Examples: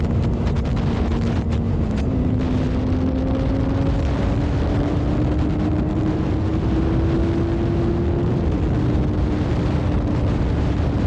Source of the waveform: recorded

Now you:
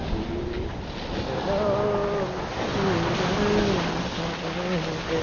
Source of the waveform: recorded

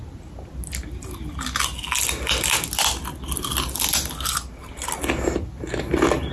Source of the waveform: recorded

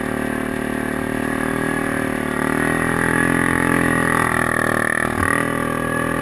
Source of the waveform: recorded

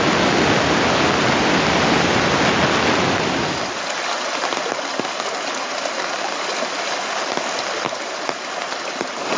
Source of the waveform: recorded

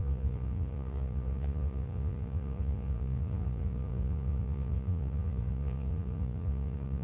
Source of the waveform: remade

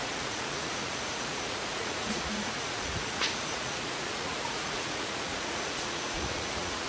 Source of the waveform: remade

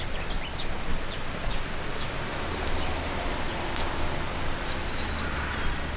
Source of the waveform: recorded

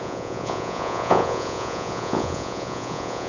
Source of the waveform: remade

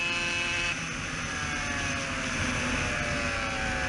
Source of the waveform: recorded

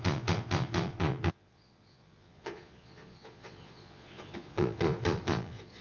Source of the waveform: remade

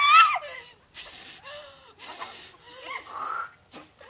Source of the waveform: recorded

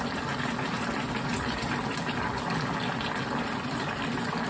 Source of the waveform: recorded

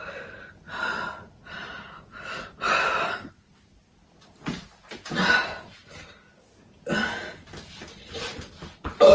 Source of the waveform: recorded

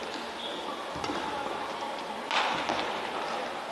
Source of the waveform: recorded